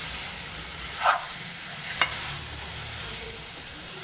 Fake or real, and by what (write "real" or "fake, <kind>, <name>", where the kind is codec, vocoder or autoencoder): fake, vocoder, BigVGAN v2